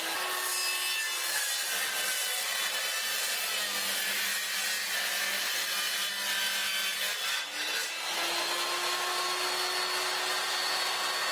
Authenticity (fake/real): real